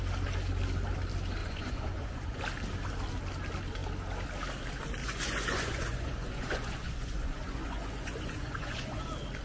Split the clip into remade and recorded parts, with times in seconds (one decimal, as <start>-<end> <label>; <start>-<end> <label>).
0.0-1.4 recorded; 1.4-2.4 remade; 2.4-5.0 recorded; 5.0-9.0 remade; 9.0-9.4 recorded